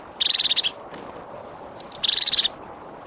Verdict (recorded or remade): recorded